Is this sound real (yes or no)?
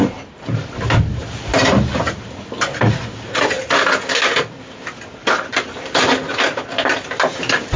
yes